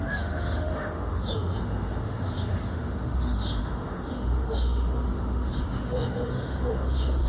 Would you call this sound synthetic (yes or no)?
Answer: yes